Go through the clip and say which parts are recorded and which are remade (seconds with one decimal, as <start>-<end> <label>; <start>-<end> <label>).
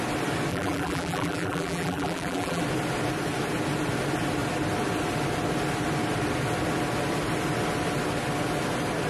0.0-0.5 recorded; 0.5-2.6 remade; 2.6-9.1 recorded